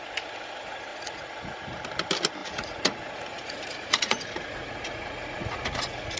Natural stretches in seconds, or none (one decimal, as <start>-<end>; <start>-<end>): 0.0-0.9; 1.6-2.4